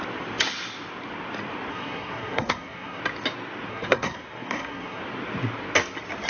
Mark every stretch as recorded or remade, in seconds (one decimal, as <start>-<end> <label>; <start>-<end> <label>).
0.0-1.7 recorded; 1.7-3.0 remade; 3.0-3.7 recorded; 3.7-5.0 remade; 5.0-6.3 recorded